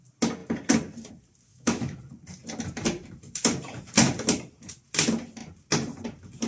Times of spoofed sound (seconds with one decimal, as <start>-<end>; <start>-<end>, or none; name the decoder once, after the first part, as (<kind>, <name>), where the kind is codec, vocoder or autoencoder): 1.5-2.0 (autoencoder, DAC-VAE)